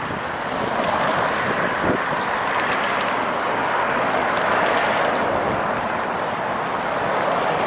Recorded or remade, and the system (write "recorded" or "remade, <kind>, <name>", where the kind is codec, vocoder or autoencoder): recorded